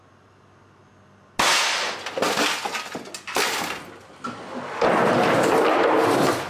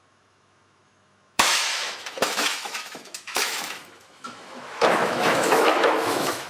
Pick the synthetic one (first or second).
second